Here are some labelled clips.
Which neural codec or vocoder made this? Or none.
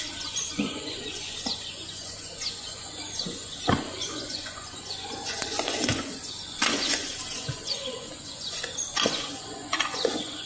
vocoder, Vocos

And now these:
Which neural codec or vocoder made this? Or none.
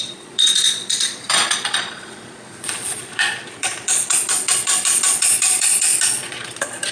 vocoder, Vocos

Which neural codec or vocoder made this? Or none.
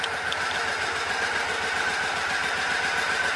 none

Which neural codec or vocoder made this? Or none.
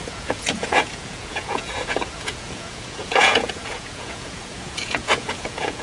vocoder, Vocos